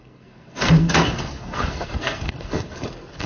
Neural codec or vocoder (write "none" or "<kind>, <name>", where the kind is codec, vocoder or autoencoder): codec, SNAC